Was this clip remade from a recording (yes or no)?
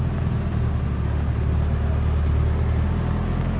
no